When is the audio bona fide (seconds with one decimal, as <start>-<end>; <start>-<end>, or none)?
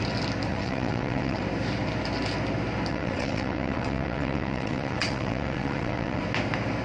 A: 0.0-0.5; 1.4-2.9; 6.2-6.8